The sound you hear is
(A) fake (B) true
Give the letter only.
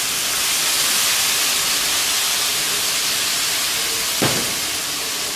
B